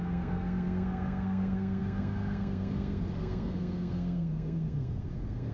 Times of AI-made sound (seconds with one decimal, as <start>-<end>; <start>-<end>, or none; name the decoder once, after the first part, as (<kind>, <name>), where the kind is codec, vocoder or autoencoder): 0.0-5.5 (codec, SNAC)